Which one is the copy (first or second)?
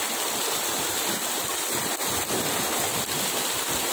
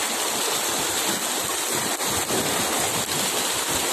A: first